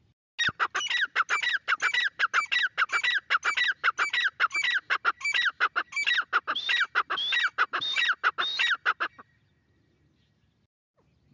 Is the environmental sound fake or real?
real